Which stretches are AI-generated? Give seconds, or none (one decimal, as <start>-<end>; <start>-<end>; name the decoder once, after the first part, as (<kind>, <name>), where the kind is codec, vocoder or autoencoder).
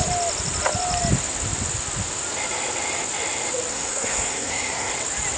3.7-4.9 (codec, SNAC)